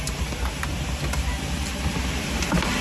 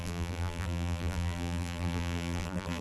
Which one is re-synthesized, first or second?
second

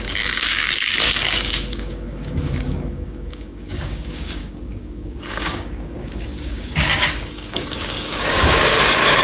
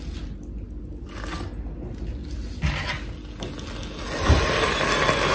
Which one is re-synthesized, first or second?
first